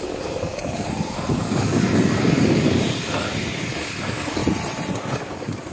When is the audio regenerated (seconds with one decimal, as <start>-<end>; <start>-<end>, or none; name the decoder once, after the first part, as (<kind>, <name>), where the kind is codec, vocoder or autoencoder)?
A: 0.0-4.4 (codec, DAC); 4.9-5.7